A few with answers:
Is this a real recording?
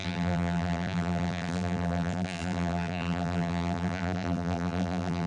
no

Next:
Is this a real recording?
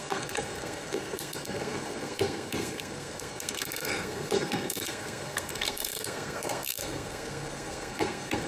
no